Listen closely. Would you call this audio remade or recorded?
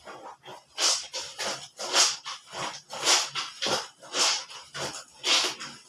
recorded